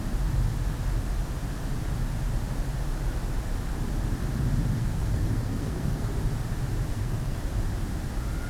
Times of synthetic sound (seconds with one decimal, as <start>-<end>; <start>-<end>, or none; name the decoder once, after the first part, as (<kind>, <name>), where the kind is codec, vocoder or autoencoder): 4.8-6.1 (codec, SNAC); 6.9-7.4